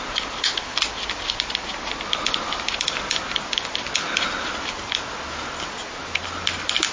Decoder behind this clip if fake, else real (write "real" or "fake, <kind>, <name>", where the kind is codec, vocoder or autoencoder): real